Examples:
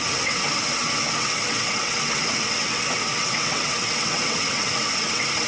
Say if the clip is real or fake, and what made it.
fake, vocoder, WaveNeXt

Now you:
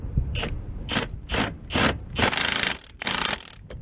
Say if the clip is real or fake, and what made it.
real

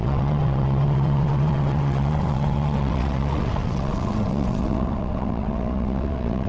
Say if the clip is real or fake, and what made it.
fake, vocoder, WaveNeXt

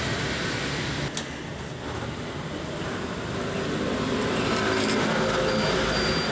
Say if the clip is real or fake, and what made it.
real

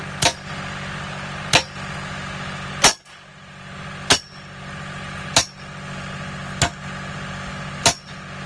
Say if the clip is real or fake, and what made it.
real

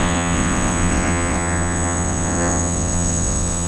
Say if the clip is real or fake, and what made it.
fake, vocoder, WaveNeXt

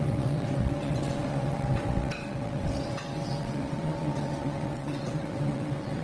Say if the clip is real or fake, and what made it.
fake, vocoder, WaveNeXt